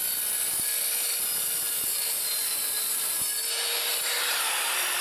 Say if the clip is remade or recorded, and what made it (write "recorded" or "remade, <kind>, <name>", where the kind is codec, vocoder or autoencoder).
recorded